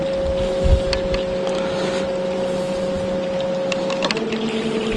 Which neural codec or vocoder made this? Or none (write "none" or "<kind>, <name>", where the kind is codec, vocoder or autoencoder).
none